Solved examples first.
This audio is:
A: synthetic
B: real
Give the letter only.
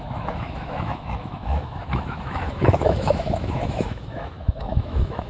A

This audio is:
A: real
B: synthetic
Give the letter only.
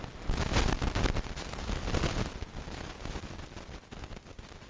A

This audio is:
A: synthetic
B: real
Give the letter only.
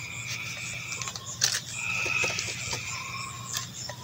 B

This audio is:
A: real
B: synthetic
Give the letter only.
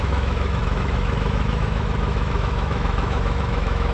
B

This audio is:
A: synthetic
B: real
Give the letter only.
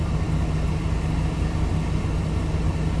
B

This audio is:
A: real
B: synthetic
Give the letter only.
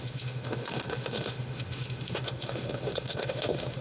B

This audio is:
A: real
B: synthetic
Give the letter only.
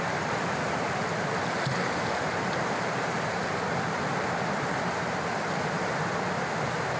A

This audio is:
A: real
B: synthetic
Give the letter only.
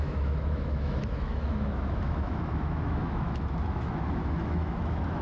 B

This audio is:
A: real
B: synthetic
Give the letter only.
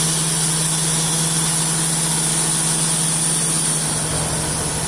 A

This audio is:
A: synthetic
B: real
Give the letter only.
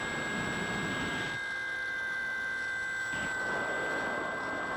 B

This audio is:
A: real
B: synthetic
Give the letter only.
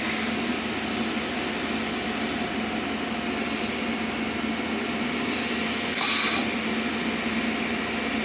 A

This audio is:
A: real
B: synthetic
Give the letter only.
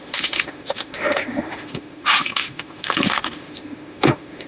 B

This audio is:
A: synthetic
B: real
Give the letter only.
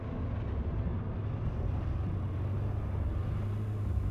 B